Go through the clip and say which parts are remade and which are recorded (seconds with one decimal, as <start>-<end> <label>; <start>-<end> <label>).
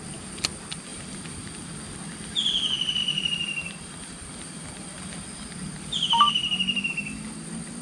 0.0-0.9 recorded; 0.9-1.5 remade; 1.5-7.8 recorded